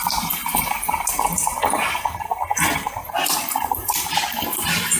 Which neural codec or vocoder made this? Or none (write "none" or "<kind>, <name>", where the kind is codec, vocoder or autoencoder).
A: vocoder, BigVGAN v2